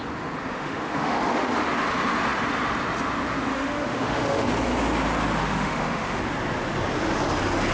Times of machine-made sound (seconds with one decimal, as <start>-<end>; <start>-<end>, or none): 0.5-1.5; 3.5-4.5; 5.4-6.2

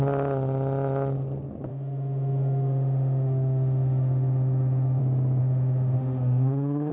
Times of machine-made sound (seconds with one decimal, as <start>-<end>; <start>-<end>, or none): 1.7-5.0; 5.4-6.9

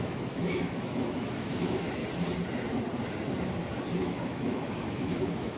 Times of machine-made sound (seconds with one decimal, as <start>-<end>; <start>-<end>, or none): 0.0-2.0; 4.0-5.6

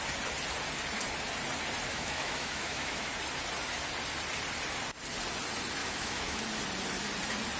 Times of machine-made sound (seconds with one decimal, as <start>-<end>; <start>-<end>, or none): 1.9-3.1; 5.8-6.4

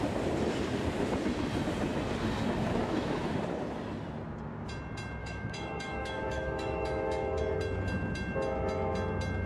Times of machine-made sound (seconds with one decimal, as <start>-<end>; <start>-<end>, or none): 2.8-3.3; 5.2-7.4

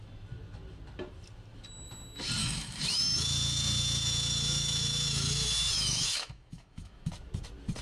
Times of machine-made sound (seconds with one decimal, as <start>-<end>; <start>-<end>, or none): 2.4-7.1

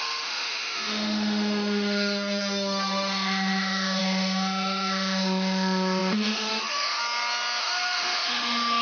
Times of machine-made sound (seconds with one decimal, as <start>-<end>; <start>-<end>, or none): 0.0-7.0; 7.6-8.8

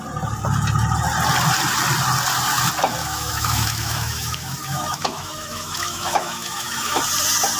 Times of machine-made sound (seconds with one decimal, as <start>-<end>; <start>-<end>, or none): 3.0-7.0